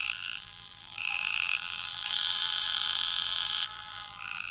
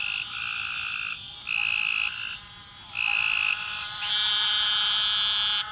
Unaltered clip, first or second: second